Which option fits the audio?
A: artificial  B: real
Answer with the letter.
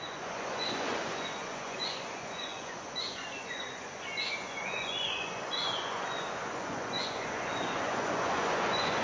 A